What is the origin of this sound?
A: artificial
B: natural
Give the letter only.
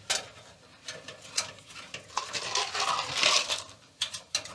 B